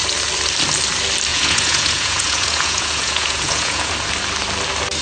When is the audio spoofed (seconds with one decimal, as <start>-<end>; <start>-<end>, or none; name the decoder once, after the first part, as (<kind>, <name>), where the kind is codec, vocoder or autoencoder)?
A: 1.3-3.9 (vocoder, Vocos)